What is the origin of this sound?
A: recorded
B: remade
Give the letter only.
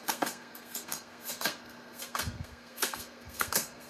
B